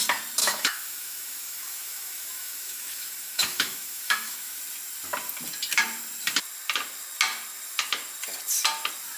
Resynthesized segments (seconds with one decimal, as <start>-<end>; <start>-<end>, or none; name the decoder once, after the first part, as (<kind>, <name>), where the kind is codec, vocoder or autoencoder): 0.4-4.6 (autoencoder, DAC-VAE)